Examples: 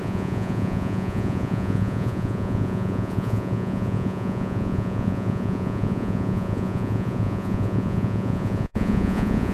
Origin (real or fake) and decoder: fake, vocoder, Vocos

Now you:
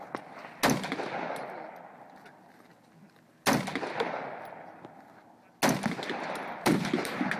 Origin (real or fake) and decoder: real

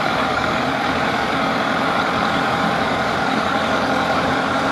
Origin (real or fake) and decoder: fake, codec, DAC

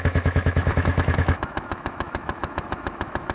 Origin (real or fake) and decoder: fake, autoencoder, DAC-VAE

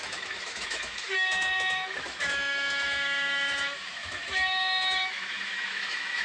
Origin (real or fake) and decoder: fake, autoencoder, DAC-VAE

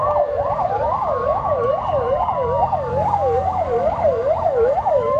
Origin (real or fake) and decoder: fake, codec, DAC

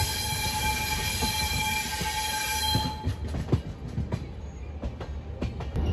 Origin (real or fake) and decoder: real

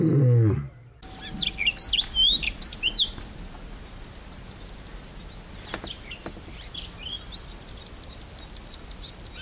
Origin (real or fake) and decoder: real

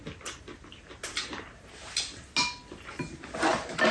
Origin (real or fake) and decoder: real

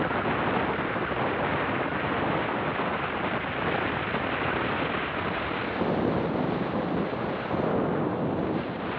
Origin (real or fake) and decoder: real